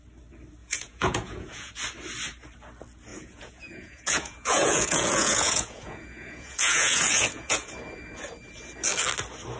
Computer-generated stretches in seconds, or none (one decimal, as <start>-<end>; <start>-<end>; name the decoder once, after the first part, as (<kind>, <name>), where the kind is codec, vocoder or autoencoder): 0.6-1.7 (vocoder, Vocos); 3.1-7.7